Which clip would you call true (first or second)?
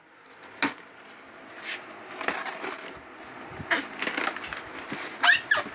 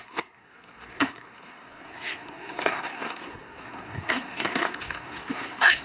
first